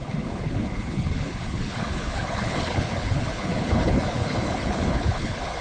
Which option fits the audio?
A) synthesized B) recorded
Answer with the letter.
A